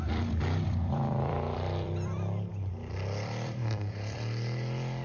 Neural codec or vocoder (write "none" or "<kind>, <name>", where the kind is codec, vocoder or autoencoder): vocoder, BigVGAN v2